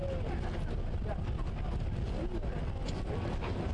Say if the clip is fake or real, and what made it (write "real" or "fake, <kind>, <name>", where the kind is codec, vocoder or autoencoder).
real